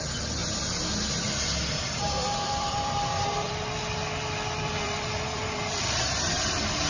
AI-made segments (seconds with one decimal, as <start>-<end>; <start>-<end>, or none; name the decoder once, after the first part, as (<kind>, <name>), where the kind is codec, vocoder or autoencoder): 0.0-0.4 (vocoder, BigVGAN v2); 2.5-6.9